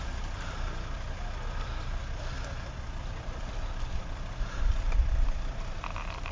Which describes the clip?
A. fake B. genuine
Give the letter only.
A